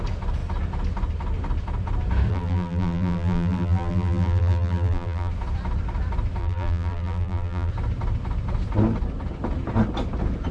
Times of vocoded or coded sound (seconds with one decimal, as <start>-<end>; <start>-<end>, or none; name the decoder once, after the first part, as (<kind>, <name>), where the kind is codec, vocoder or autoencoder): 2.3-5.3 (vocoder, BigVGAN v2); 6.4-7.7